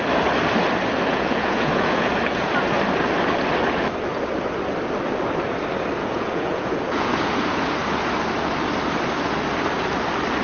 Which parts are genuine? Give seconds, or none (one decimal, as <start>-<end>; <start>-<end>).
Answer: 0.0-1.1; 2.1-6.0; 7.7-10.4